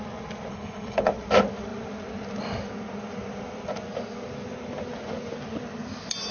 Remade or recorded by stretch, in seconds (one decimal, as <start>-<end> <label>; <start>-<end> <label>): 0.0-0.5 recorded; 0.5-1.1 remade; 1.1-6.3 recorded